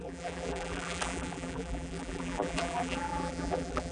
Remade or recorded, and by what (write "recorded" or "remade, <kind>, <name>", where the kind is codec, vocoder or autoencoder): remade, vocoder, BigVGAN v2